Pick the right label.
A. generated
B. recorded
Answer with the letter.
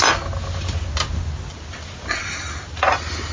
B